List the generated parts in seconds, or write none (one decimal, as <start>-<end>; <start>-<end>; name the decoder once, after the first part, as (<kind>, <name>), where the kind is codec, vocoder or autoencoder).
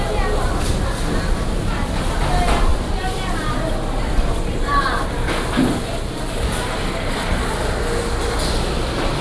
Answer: 2.7-7.2 (vocoder, BigVGAN v2)